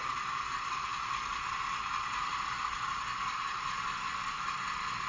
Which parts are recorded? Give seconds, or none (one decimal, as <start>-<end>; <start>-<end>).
0.0-5.1